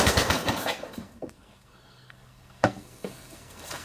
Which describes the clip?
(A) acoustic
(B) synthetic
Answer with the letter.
B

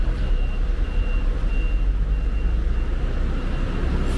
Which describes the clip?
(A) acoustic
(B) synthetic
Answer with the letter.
A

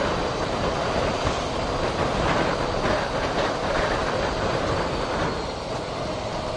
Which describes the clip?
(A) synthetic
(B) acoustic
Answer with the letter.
B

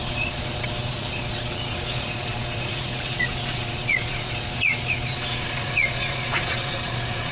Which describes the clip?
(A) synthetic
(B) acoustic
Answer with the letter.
A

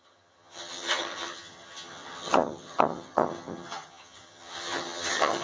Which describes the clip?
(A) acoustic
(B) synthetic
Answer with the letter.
B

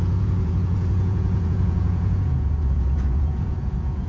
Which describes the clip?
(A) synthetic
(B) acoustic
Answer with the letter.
A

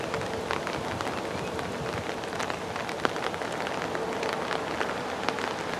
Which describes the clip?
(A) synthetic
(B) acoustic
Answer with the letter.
B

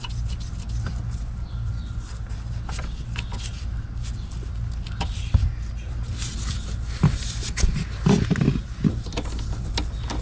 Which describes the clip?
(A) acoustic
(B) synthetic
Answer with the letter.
A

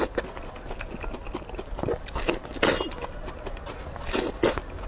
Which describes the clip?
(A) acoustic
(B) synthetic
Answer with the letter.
A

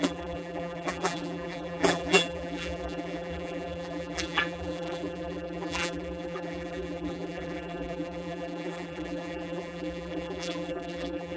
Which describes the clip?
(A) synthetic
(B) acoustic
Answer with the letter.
A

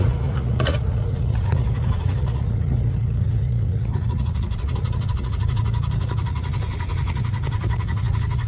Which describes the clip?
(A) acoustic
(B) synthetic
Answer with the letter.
B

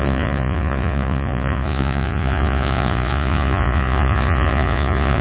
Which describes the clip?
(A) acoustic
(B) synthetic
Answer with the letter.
B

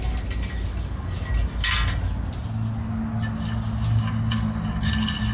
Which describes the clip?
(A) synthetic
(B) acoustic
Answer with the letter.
B